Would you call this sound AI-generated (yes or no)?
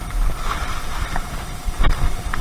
yes